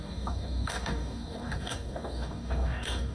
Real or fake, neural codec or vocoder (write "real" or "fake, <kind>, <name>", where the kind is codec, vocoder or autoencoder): fake, codec, DAC